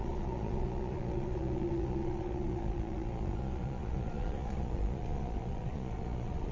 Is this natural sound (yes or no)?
no